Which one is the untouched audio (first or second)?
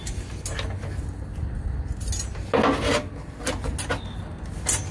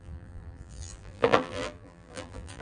first